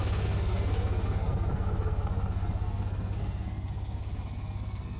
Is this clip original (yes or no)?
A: no